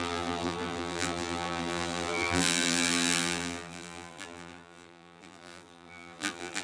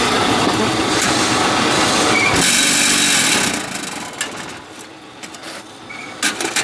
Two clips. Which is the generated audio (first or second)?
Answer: first